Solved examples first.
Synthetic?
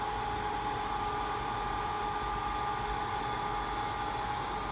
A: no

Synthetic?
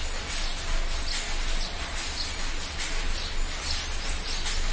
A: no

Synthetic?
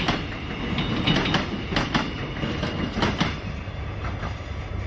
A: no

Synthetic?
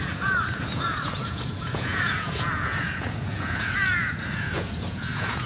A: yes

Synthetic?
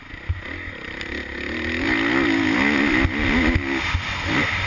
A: no